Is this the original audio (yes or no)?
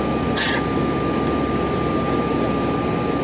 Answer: yes